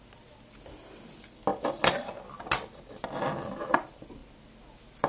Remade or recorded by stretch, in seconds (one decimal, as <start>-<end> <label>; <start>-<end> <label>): 0.0-5.1 recorded